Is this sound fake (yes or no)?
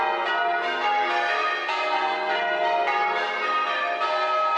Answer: no